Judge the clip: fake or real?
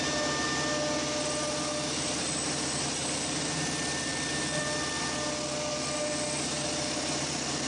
real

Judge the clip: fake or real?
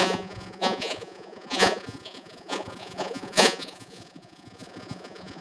fake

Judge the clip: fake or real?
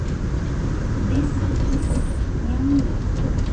real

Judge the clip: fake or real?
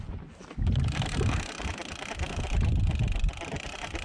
real